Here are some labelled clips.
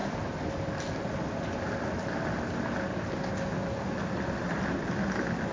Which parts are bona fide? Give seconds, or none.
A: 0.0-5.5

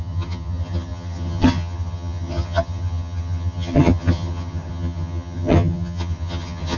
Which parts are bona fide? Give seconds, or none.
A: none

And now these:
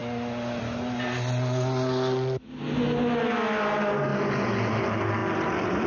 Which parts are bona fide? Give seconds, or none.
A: 0.0-5.9

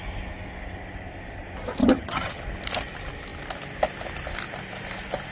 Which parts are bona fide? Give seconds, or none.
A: 0.0-1.8; 2.4-5.3

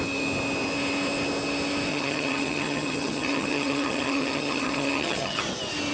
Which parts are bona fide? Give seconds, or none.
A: 0.0-1.9; 5.4-5.9

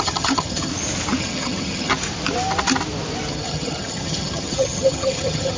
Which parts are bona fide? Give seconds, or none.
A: 0.7-1.2; 1.9-3.3

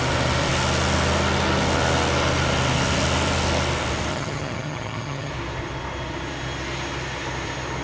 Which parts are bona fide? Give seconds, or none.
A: 0.0-4.1; 5.3-7.8